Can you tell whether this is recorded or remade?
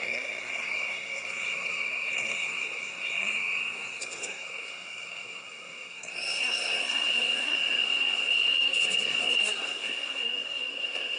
remade